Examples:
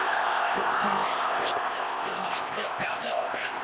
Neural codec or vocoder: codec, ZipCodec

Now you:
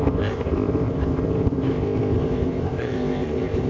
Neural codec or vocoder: codec, ZipCodec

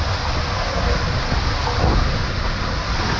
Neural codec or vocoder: none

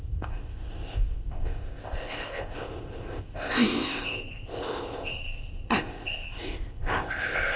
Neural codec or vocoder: codec, ZipCodec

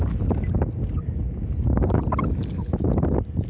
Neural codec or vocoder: none